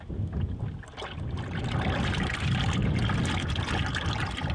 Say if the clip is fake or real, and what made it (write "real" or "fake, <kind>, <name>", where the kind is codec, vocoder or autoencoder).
real